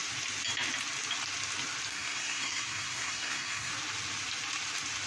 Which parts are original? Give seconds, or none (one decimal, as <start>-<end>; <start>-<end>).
0.0-1.9; 3.7-5.1